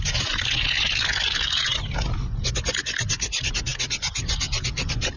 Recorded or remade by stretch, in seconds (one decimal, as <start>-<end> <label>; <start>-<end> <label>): 0.0-5.2 recorded